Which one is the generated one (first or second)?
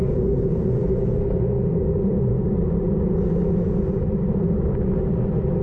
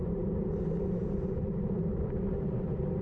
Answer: second